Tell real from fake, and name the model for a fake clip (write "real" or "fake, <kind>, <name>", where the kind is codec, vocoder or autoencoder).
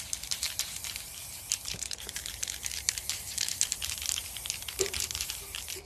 fake, vocoder, BigVGAN v2